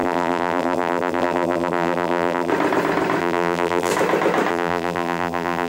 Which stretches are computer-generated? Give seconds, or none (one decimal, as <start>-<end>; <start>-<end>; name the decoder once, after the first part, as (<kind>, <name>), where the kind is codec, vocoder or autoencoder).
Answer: 0.0-2.5 (vocoder, BigVGAN v2); 3.2-3.9; 4.5-5.7